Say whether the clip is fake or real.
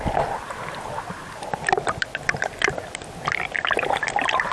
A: real